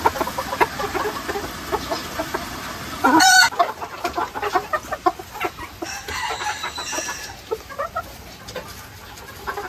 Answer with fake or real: real